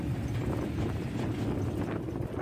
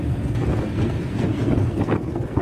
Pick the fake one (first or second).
second